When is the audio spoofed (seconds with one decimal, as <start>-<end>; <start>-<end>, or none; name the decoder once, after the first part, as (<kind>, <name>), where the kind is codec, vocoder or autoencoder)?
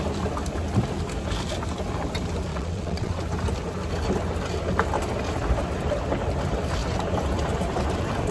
2.5-3.2 (vocoder, WaveNeXt)